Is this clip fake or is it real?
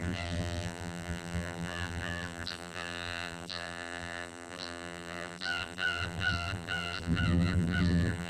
fake